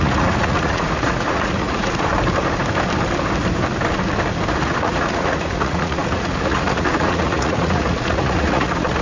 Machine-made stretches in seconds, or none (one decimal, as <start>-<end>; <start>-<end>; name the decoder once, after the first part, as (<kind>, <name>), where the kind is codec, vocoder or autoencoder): 0.0-2.1 (vocoder, Vocos); 4.5-9.0